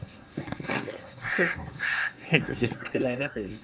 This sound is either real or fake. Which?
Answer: fake